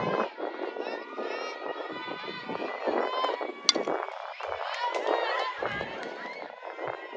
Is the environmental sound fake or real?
real